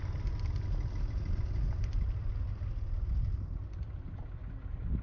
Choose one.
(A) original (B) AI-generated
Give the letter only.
A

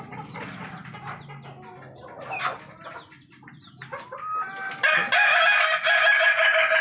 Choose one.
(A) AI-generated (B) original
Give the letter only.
B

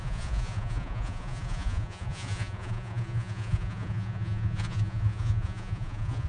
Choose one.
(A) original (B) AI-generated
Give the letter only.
B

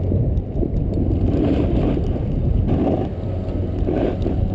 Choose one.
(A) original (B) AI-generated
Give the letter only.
A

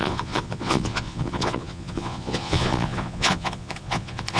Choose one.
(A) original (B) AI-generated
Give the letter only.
B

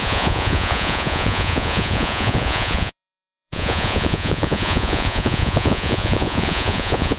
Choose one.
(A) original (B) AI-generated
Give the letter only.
B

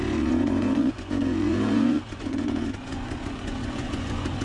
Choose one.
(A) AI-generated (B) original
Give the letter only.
A